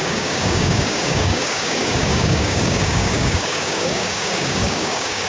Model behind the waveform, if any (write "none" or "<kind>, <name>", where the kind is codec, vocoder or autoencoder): codec, DAC